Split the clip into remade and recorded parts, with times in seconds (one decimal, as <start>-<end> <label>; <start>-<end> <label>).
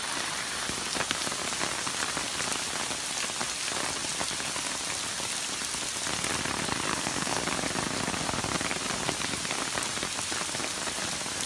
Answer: 0.0-6.9 recorded; 6.9-7.4 remade; 7.4-11.5 recorded